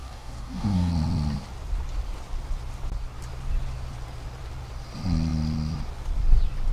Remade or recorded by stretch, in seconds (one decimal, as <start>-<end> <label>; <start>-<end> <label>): 0.0-0.9 remade; 0.9-6.7 recorded